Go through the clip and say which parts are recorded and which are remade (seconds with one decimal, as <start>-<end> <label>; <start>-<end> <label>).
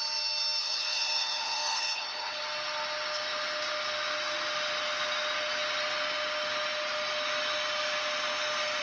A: 0.0-0.6 recorded; 0.6-2.4 remade; 2.4-8.8 recorded